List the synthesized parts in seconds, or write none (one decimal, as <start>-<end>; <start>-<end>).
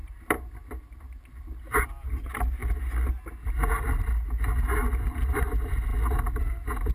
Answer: 0.0-0.8